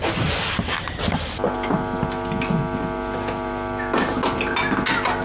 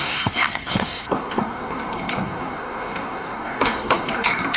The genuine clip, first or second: first